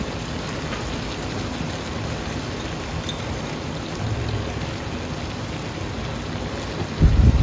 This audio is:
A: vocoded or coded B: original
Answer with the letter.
B